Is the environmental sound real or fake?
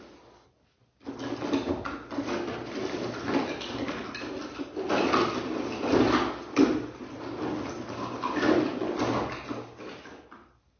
real